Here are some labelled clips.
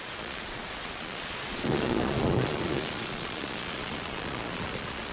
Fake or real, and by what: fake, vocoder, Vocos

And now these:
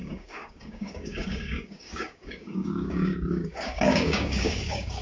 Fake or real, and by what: fake, codec, DAC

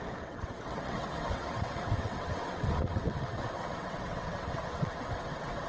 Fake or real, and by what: fake, vocoder, WaveNeXt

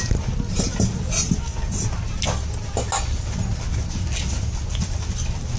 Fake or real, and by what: real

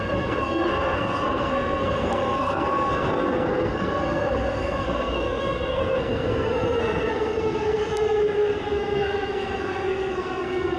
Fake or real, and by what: fake, codec, SNAC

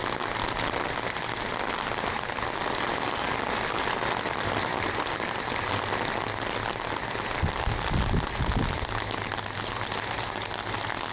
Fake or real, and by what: real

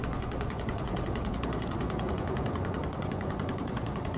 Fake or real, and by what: fake, vocoder, Vocos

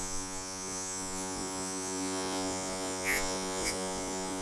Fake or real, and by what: fake, vocoder, Vocos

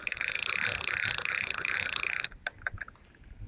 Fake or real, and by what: real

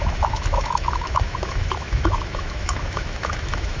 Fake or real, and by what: fake, autoencoder, DAC-VAE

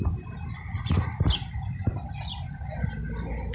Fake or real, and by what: real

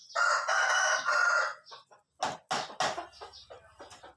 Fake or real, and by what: real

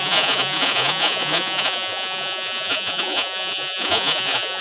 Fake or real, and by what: fake, vocoder, Vocos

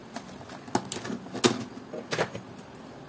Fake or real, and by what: real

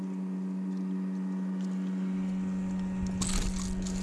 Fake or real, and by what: real